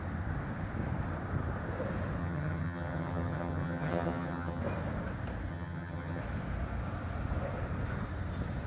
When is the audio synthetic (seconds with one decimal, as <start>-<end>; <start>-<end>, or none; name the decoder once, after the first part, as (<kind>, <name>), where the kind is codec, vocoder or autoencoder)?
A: 2.2-4.6 (vocoder, HiFi-GAN); 5.5-6.2